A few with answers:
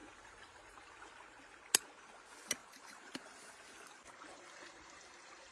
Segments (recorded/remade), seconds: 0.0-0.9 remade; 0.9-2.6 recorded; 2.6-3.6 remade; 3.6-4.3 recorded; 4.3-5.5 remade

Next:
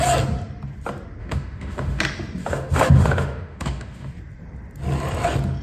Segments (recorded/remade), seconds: 0.0-1.2 recorded; 1.2-2.0 remade; 2.0-2.4 recorded; 2.4-4.1 remade; 4.1-5.6 recorded

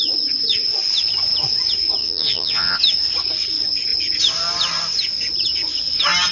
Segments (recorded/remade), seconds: 0.0-2.0 recorded; 2.0-2.8 remade; 2.8-6.3 recorded

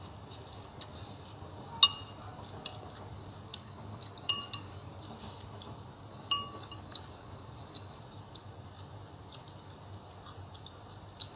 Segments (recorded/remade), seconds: 0.0-3.5 recorded; 3.5-4.9 remade; 4.9-6.1 recorded; 6.1-8.0 remade; 8.0-11.4 recorded

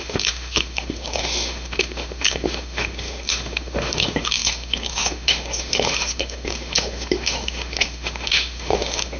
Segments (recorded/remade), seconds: 0.0-9.2 remade